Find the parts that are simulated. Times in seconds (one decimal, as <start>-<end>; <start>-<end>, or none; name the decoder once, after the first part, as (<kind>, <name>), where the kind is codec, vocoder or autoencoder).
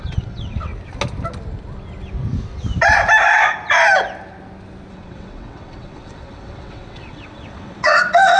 0.0-0.7 (vocoder, WaveNeXt); 4.9-8.4